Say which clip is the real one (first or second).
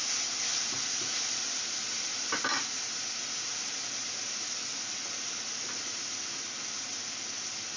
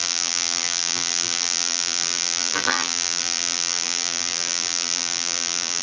first